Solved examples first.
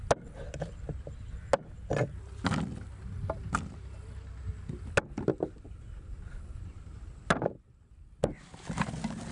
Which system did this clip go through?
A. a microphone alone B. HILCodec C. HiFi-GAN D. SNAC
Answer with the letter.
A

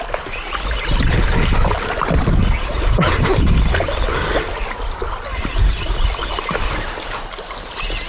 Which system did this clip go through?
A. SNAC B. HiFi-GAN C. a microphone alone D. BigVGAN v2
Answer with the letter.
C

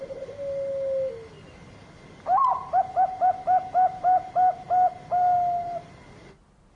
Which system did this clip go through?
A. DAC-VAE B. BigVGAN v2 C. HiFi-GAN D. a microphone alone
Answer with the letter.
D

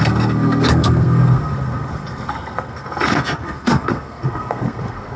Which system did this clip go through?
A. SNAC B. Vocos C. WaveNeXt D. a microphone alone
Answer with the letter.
A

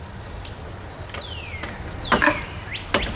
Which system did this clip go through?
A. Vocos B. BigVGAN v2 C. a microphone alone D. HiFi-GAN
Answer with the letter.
C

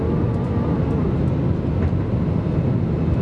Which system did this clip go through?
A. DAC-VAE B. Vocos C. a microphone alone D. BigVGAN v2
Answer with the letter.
C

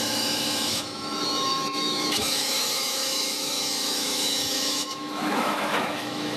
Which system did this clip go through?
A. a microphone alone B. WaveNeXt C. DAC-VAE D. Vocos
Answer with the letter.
C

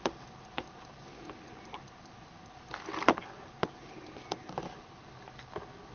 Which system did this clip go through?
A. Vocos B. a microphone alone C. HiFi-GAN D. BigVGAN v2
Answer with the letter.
B